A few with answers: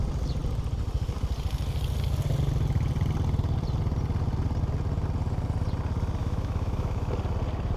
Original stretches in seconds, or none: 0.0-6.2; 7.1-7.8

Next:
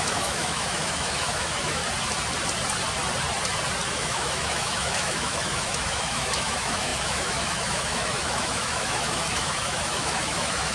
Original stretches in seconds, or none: 1.8-3.9

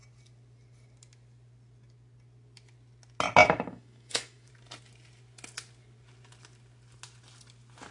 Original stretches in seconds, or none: 0.0-3.4; 4.5-7.9

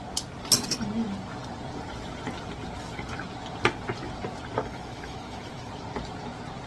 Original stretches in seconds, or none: 0.0-4.6; 5.7-6.7

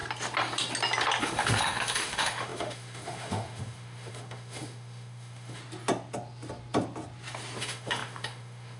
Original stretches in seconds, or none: 0.0-1.2; 5.6-7.6